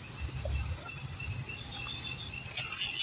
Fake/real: real